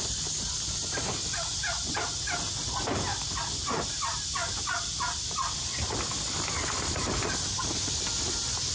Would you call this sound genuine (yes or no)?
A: yes